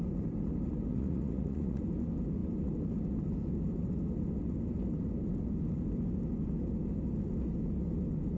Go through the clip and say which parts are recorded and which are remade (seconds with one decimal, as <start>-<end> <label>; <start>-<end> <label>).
0.0-0.9 recorded; 0.9-1.8 remade; 1.8-8.4 recorded